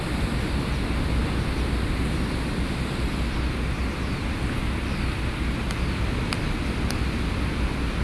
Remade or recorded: recorded